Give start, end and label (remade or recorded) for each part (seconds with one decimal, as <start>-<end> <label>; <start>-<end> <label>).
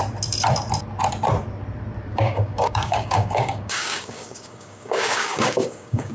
0.0-2.1 recorded; 2.1-6.1 remade